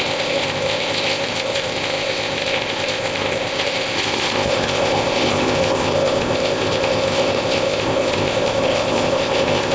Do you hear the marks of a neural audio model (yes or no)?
yes